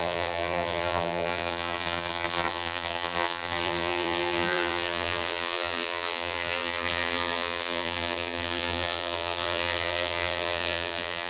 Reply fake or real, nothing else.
fake